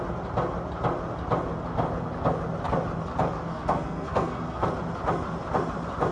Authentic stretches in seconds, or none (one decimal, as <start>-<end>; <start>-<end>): 0.0-3.4; 4.7-6.1